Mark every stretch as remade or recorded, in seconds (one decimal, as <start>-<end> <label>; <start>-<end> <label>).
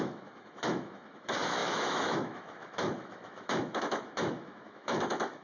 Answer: 0.0-5.4 remade